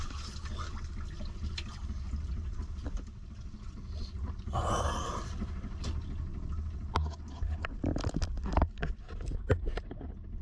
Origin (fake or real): real